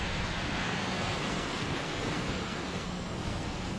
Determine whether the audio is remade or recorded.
remade